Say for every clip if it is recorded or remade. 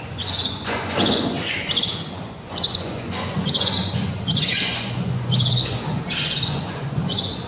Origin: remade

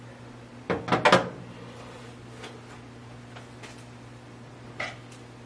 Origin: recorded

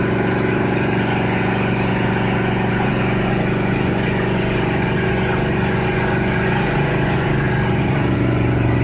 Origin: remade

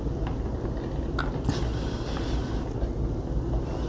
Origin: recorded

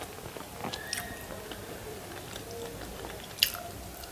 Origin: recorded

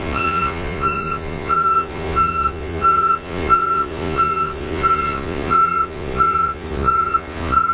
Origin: remade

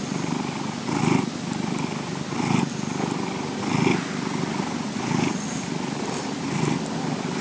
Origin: recorded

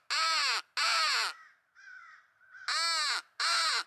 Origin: recorded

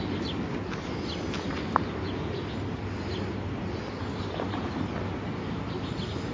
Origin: recorded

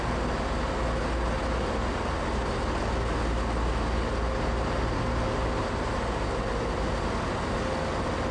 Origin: recorded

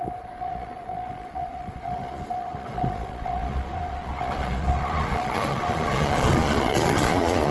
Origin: remade